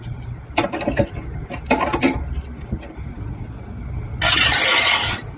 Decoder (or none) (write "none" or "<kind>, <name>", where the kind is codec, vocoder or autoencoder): none